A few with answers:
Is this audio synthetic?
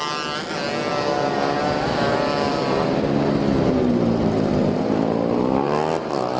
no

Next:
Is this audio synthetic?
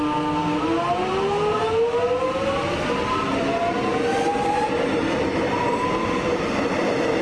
no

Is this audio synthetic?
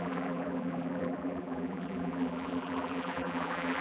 yes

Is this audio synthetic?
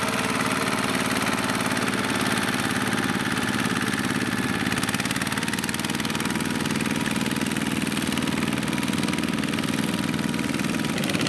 yes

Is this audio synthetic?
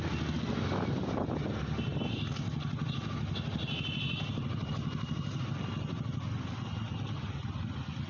no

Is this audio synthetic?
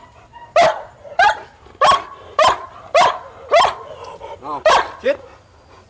no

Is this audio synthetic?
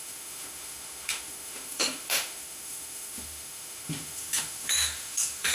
yes